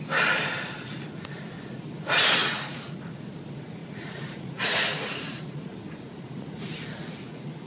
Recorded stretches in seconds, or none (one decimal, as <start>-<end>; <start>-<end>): 0.0-2.4; 3.2-3.8